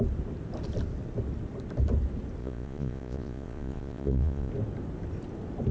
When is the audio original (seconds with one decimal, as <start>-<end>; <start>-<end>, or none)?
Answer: 0.0-2.4; 4.5-5.7